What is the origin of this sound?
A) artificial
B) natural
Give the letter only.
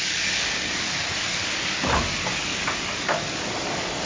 A